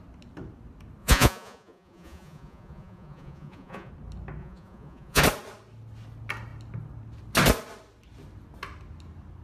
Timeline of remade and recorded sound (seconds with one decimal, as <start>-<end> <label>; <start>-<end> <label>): 0.0-1.0 recorded; 1.0-3.9 remade; 3.9-4.4 recorded; 4.4-5.2 remade; 5.2-9.4 recorded